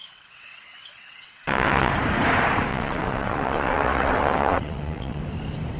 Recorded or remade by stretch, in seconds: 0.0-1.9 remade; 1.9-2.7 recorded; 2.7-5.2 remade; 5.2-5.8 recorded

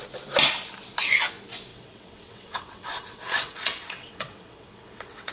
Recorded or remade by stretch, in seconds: 0.0-1.7 recorded; 1.7-5.3 remade

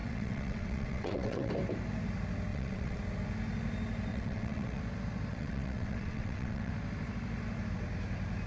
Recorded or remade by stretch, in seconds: 0.0-1.5 remade; 1.5-2.5 recorded; 2.5-3.0 remade; 3.0-4.1 recorded; 4.1-4.8 remade; 4.8-5.3 recorded; 5.3-6.7 remade; 6.7-8.5 recorded

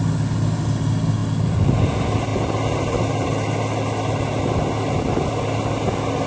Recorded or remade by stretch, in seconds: 0.0-6.3 recorded